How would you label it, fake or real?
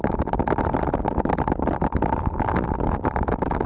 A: real